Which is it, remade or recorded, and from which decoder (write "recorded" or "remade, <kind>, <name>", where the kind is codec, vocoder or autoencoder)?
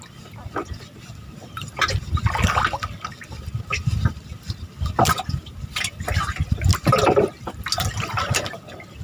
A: recorded